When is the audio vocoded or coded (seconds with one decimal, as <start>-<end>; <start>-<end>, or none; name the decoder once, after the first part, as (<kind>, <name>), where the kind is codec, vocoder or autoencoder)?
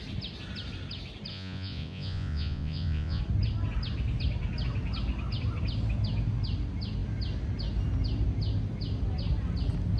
1.3-3.2 (vocoder, Vocos)